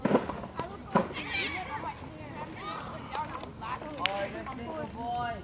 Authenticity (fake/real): real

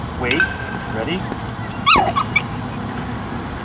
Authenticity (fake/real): real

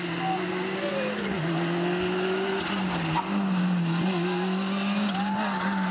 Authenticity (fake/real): real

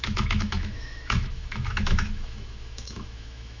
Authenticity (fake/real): fake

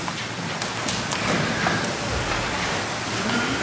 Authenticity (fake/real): real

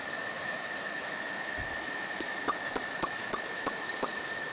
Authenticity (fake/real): fake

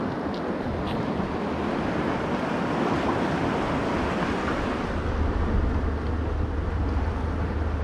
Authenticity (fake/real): real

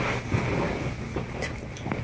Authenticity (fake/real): real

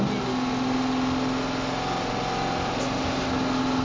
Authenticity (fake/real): real